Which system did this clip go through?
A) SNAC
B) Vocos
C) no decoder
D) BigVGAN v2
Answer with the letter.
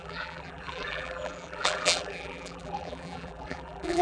D